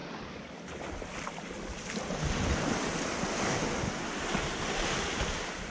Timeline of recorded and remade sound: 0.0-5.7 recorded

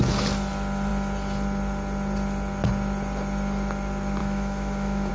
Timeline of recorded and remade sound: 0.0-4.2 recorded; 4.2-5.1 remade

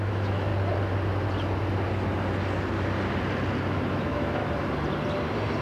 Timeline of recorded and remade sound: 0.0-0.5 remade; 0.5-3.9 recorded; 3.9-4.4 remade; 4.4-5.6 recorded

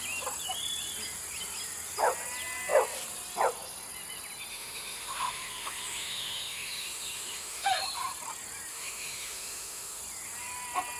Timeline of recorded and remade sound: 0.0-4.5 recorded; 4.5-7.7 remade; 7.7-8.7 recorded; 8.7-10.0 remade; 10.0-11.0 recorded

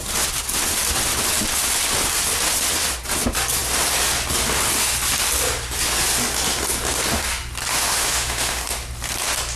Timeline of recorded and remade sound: 0.0-7.7 recorded; 7.7-8.6 remade; 8.6-9.6 recorded